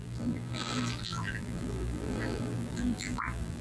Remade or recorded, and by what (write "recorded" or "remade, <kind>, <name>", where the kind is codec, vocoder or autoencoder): remade, vocoder, BigVGAN v2